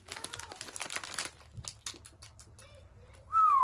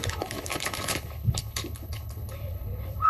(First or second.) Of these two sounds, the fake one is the second